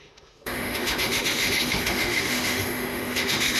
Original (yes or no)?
no